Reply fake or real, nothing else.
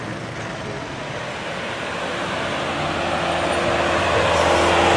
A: real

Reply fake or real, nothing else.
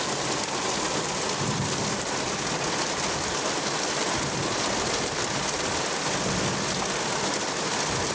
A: real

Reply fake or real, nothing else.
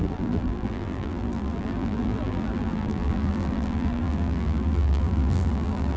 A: fake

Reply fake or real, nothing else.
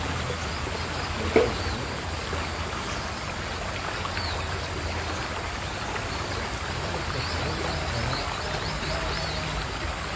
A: real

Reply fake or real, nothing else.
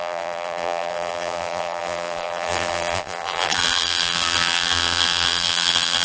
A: fake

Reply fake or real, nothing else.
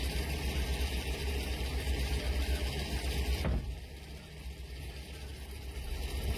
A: real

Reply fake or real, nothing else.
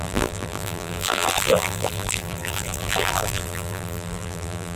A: fake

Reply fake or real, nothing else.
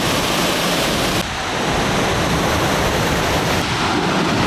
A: real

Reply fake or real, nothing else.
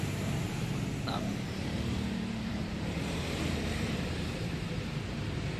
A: fake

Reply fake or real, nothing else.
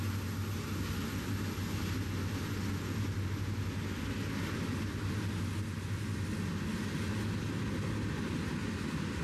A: real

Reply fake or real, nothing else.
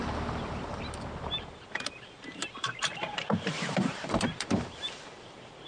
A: fake